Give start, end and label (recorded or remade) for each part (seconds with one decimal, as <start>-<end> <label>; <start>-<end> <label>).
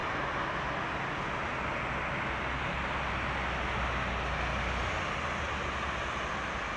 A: 0.0-6.8 recorded